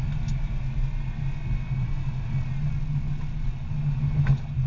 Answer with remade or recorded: recorded